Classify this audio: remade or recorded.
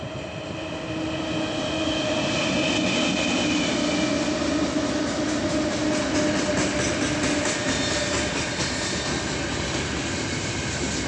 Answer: recorded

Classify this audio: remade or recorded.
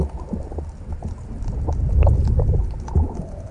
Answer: recorded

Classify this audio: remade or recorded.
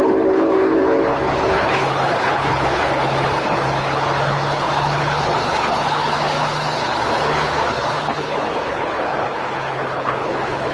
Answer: remade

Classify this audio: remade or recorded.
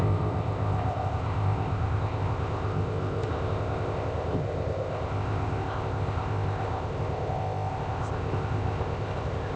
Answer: remade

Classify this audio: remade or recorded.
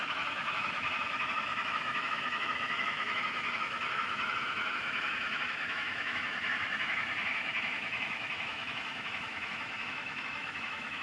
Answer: remade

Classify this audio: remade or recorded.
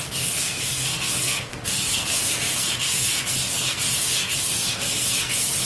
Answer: remade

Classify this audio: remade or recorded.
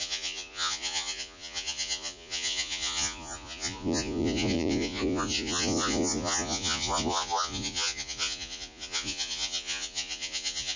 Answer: remade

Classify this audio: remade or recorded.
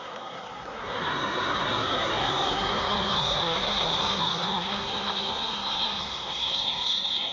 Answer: remade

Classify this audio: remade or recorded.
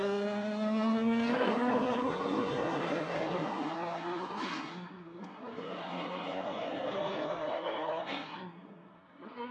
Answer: remade